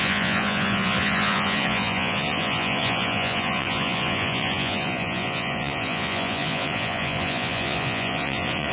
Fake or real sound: fake